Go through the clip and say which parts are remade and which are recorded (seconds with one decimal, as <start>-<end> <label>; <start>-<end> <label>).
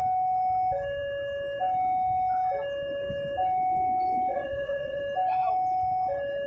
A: 0.0-4.3 recorded; 4.3-5.0 remade; 5.0-6.5 recorded